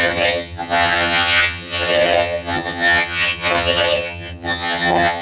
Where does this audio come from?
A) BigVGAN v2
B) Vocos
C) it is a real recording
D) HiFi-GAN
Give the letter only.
D